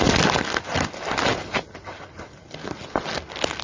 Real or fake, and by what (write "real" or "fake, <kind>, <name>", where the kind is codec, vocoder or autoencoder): real